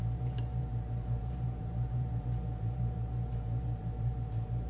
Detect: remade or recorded remade